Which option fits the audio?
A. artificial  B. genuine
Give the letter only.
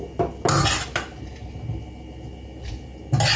B